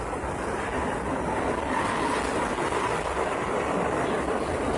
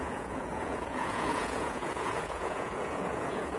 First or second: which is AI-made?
second